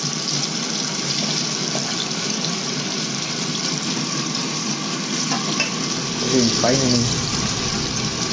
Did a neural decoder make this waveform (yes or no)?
no